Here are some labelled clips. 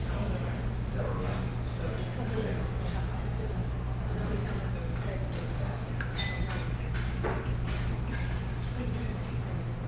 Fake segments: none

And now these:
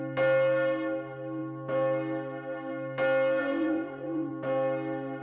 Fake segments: 3.4-4.3 (vocoder, Vocos)

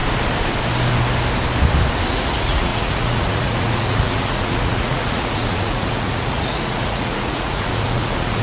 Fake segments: 2.1-8.4 (vocoder, Vocos)

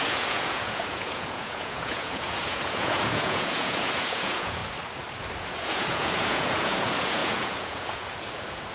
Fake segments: 0.0-4.6 (vocoder, Vocos); 5.4-8.7

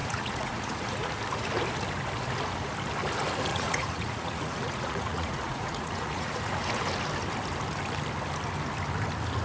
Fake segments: 0.0-1.1 (vocoder, Vocos); 3.5-6.8

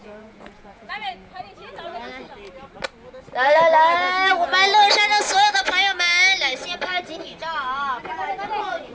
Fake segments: 0.0-1.4 (vocoder, Vocos)

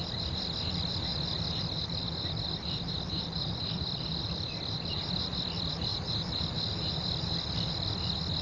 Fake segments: none

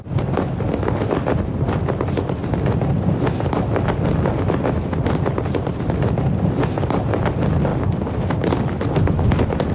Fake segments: none